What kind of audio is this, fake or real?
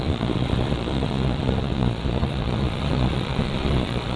fake